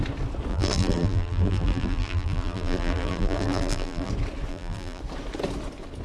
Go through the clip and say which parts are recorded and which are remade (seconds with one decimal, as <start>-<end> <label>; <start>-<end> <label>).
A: 0.0-0.5 recorded; 0.5-4.1 remade; 4.1-4.5 recorded; 4.5-5.0 remade; 5.0-6.0 recorded